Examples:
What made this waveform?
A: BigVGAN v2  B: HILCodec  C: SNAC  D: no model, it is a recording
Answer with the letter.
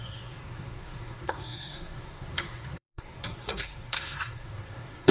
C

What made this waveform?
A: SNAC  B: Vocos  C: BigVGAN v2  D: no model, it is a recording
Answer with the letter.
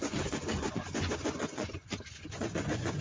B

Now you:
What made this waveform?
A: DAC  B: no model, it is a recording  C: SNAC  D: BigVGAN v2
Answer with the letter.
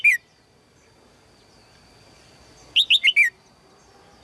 B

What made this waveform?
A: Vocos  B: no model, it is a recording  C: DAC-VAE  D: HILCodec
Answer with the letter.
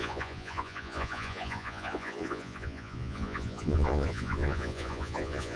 A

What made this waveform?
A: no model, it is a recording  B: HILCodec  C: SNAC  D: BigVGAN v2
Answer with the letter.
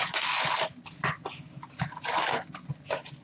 A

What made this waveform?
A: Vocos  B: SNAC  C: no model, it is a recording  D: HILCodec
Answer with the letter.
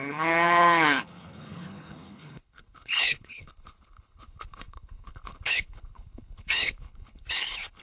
D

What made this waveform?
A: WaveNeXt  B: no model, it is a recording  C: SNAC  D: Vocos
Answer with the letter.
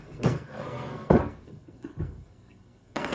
C